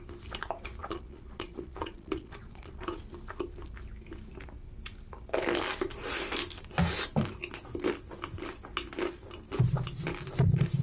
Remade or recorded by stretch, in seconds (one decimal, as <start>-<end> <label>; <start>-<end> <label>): 0.0-0.8 recorded; 0.8-3.0 remade; 3.0-10.8 recorded